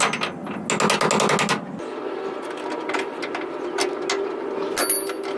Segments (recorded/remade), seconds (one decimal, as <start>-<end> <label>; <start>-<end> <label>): 0.0-5.4 recorded